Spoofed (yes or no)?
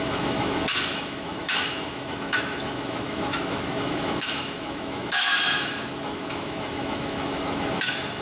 yes